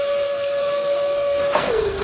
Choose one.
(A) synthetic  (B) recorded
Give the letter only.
A